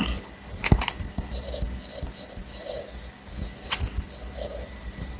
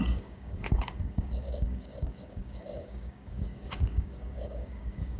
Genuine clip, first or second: first